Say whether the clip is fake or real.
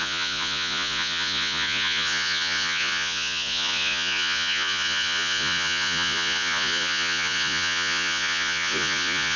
fake